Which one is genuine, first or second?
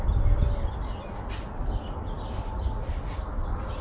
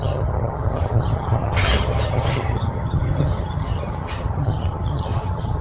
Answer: first